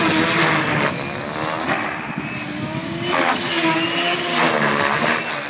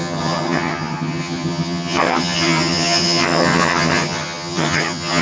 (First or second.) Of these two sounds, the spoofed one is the second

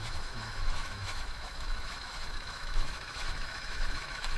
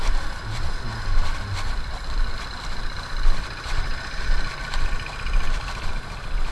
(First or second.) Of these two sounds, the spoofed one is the first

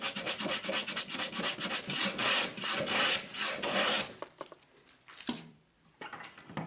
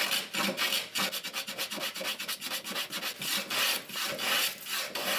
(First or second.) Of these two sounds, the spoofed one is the first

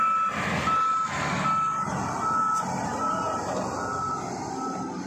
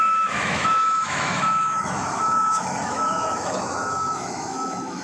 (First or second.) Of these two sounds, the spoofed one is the second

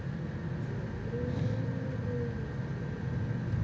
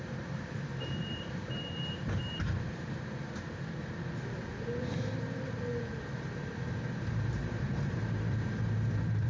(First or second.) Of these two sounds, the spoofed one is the second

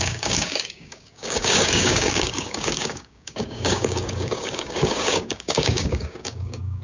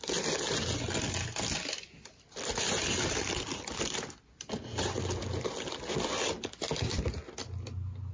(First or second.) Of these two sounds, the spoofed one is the first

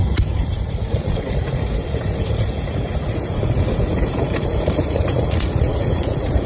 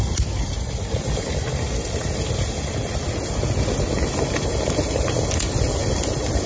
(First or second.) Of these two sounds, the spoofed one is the first